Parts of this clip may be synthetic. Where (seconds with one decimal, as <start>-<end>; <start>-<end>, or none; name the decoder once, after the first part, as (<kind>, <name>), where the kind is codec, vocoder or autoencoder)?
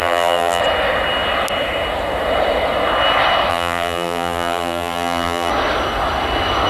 0.0-0.6 (vocoder, BigVGAN v2); 3.5-5.5